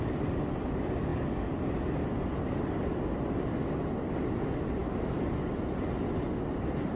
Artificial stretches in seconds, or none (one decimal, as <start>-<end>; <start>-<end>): none